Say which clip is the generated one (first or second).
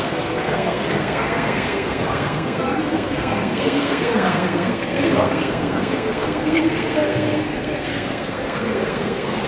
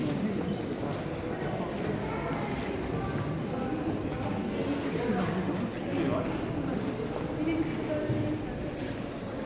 first